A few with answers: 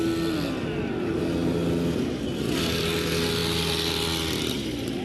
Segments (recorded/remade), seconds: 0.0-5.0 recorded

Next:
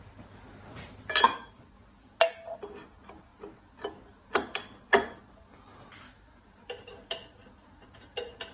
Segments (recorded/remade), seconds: 0.0-8.5 recorded

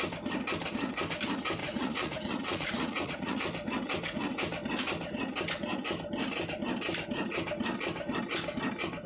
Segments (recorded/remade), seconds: 0.0-1.6 recorded; 1.6-3.4 remade; 3.4-9.1 recorded

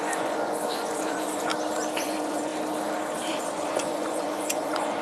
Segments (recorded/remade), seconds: 0.0-1.5 remade; 1.5-2.0 recorded; 2.0-2.5 remade; 2.5-3.4 recorded; 3.4-5.0 remade

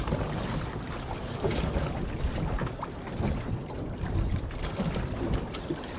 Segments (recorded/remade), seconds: 0.0-6.0 recorded

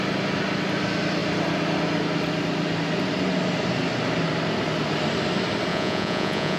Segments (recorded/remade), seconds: 0.0-5.7 recorded; 5.7-6.6 remade

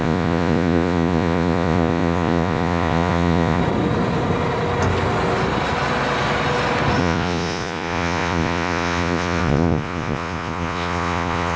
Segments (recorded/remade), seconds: 0.0-3.6 remade; 3.6-7.0 recorded; 7.0-11.6 remade

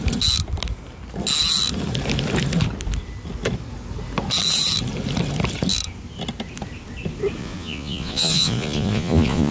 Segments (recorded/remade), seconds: 0.0-7.4 recorded; 7.4-9.5 remade